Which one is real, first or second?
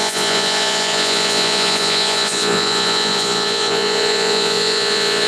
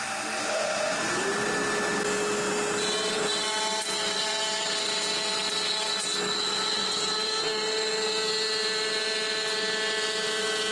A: second